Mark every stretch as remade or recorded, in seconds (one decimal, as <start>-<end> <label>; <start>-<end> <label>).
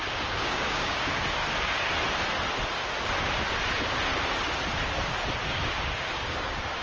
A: 0.0-1.4 remade; 1.4-5.5 recorded; 5.5-6.8 remade